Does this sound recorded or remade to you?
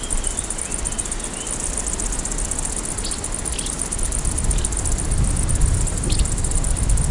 recorded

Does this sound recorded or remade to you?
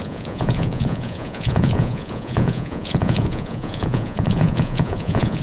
remade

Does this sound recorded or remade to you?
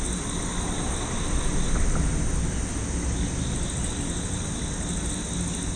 recorded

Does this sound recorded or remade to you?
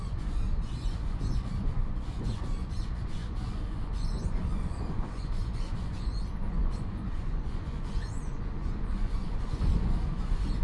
remade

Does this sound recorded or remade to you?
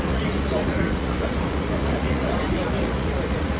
remade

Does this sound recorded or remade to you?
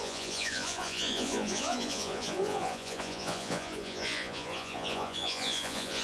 remade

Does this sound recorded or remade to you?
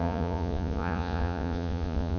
remade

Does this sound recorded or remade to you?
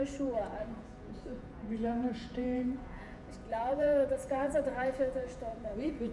remade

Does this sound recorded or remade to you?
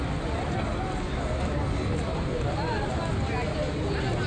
recorded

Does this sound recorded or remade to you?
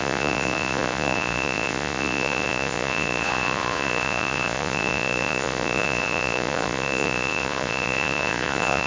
remade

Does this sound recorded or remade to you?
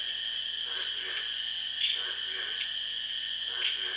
remade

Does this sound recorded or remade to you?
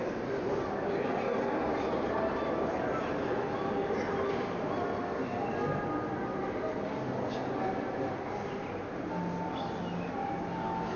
recorded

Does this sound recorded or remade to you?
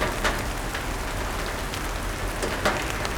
recorded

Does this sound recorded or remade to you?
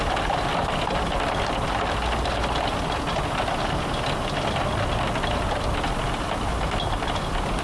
recorded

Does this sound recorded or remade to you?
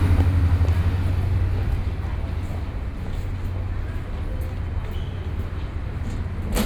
recorded